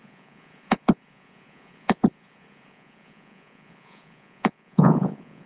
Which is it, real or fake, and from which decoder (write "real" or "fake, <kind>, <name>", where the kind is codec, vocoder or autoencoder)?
fake, vocoder, Vocos